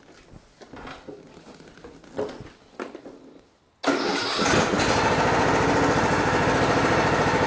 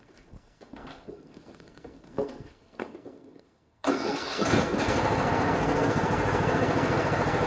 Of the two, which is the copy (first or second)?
second